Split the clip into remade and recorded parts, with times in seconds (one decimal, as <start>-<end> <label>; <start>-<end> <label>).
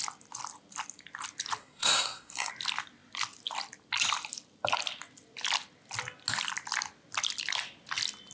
0.0-1.6 recorded; 1.6-2.5 remade; 2.5-8.3 recorded